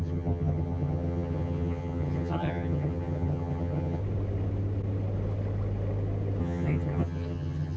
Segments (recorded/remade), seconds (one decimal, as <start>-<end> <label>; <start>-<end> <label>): 0.0-4.0 remade; 4.0-6.4 recorded; 6.4-7.8 remade